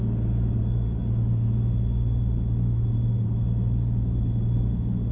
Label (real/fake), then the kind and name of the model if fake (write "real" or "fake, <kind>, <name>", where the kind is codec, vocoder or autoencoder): real